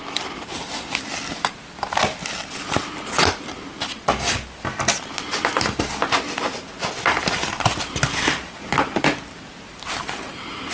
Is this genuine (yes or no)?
yes